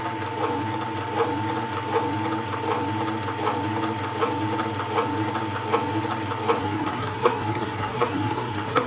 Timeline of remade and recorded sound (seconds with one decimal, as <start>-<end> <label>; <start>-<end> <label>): 0.0-6.6 recorded; 6.6-8.9 remade